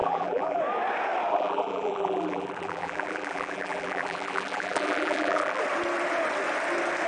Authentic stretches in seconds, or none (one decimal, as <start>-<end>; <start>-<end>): 0.6-1.3; 5.6-7.1